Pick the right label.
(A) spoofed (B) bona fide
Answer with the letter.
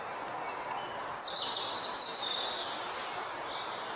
B